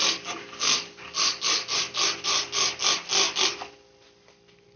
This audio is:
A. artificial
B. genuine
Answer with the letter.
B